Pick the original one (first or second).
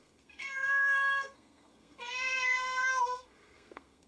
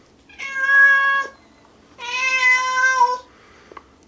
second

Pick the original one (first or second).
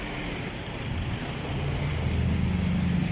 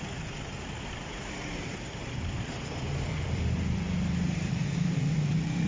first